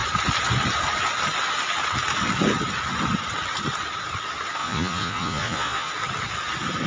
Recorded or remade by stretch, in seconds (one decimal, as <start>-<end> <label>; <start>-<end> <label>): 0.0-4.6 recorded; 4.6-5.9 remade; 5.9-6.9 recorded